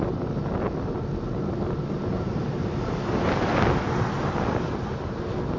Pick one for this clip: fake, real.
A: real